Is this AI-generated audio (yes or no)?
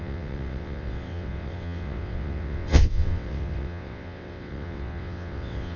yes